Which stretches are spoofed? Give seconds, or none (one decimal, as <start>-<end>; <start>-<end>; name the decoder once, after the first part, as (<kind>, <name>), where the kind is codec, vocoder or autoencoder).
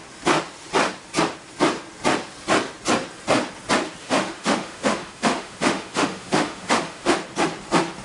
4.0-7.2 (autoencoder, DAC-VAE)